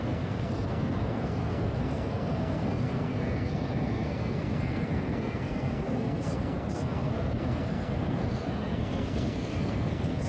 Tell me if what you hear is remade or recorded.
remade